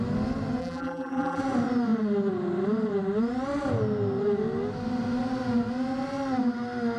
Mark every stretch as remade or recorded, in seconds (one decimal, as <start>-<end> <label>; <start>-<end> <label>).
0.0-0.6 recorded; 0.6-1.4 remade; 1.4-7.0 recorded